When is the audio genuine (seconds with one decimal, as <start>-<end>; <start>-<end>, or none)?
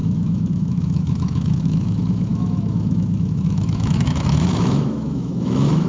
none